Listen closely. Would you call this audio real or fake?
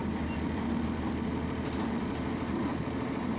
fake